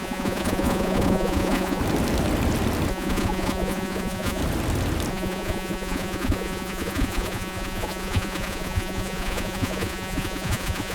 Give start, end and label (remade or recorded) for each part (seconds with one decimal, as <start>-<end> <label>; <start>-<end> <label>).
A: 0.0-1.8 remade; 1.8-2.9 recorded; 2.9-4.4 remade; 4.4-5.1 recorded; 5.1-10.9 remade